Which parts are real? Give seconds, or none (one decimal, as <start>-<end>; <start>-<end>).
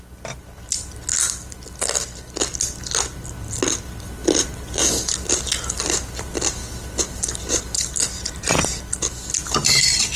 0.0-10.2